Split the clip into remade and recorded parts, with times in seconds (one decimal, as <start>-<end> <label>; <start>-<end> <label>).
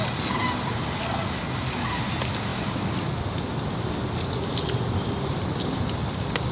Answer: 0.0-6.5 recorded